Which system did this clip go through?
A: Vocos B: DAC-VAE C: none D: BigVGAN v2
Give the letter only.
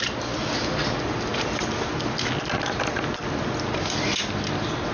C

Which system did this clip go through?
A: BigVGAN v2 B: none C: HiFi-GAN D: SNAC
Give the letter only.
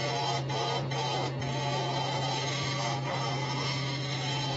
B